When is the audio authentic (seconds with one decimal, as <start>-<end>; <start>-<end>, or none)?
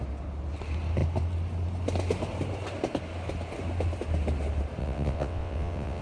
0.0-4.8